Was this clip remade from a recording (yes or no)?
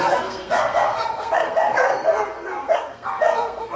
yes